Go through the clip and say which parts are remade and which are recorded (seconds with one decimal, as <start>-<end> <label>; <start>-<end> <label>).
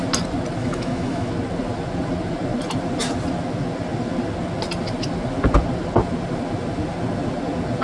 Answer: 0.0-0.6 recorded; 0.6-1.3 remade; 1.3-7.8 recorded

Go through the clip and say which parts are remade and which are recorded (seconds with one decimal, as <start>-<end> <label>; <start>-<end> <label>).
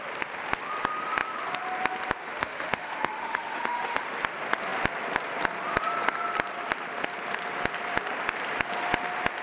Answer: 0.0-2.4 recorded; 2.4-4.0 remade; 4.0-9.4 recorded